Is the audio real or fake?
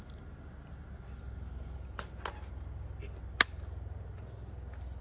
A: real